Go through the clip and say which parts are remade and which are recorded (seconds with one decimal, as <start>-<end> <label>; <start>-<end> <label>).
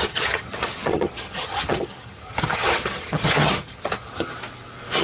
0.0-4.3 remade; 4.3-5.0 recorded